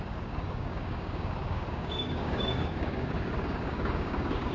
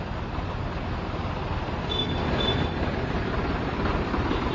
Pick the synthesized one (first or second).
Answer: first